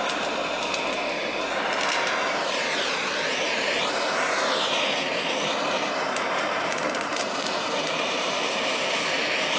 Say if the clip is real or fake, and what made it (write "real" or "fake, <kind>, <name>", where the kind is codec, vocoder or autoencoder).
fake, vocoder, BigVGAN v2